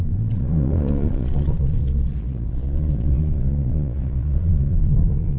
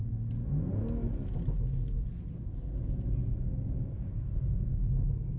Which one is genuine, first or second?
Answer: second